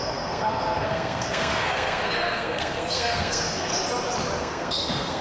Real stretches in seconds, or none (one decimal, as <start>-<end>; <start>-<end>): 3.7-4.4